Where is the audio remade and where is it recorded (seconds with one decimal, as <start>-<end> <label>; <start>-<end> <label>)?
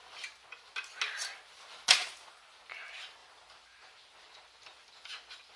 0.0-2.0 recorded; 2.0-2.6 remade; 2.6-3.2 recorded; 3.2-4.5 remade; 4.5-5.6 recorded